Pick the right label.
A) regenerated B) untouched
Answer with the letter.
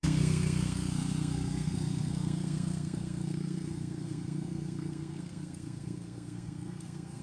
A